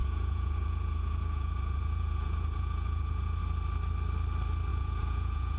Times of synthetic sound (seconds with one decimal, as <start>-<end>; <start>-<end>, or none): 0.0-3.4; 4.7-5.6